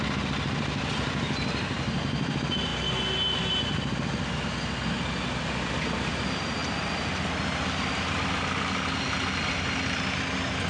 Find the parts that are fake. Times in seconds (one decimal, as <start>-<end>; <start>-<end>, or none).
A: 6.6-8.3